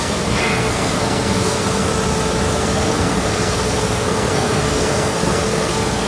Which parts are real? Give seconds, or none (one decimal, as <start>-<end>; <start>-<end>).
1.9-2.5